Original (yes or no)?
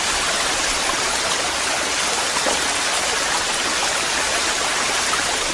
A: yes